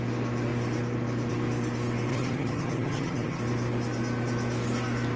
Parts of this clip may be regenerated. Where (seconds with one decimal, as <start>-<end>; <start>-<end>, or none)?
2.1-3.4